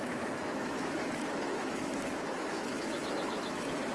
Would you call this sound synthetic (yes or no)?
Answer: yes